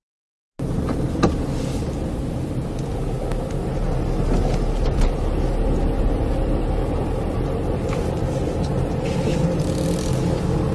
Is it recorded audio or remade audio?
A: recorded